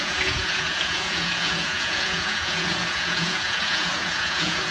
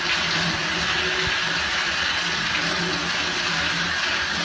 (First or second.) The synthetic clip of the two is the first